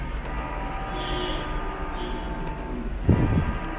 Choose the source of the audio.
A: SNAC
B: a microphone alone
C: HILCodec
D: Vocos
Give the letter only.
B